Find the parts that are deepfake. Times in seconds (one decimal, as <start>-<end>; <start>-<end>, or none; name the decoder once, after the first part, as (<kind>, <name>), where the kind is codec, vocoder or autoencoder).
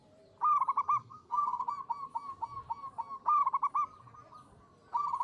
1.0-1.6 (codec, SNAC)